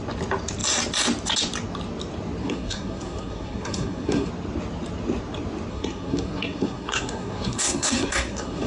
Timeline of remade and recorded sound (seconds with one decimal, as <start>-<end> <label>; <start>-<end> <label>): 0.0-2.4 recorded; 2.4-4.3 remade; 4.3-5.7 recorded; 5.7-8.7 remade